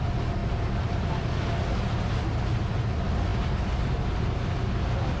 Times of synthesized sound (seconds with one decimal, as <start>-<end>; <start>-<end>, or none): none

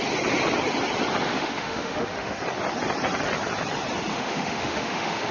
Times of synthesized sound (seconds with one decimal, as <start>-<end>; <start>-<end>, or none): 1.3-2.4; 4.1-5.3

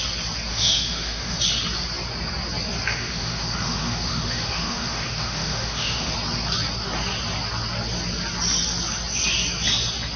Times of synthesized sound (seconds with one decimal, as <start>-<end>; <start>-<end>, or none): 0.5-1.4; 2.9-6.1

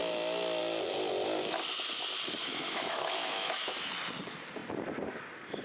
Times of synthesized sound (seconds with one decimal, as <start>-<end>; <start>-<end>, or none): 2.4-3.9